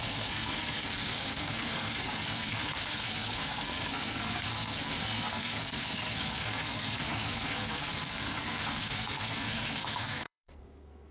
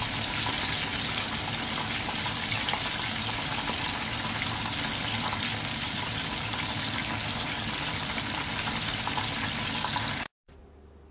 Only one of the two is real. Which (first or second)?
second